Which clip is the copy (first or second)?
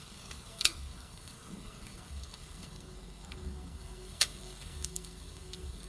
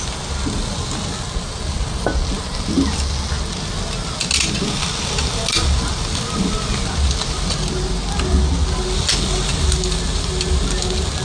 first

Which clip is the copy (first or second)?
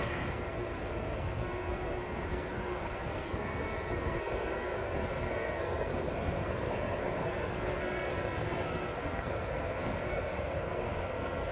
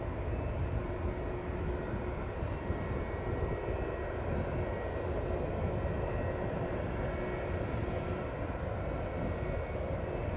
first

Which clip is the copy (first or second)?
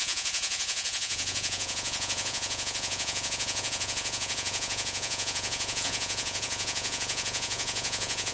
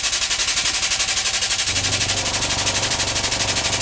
first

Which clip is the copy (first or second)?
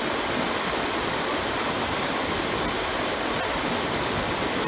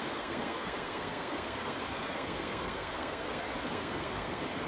second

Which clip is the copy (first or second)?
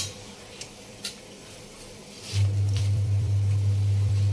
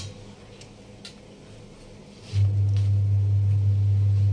first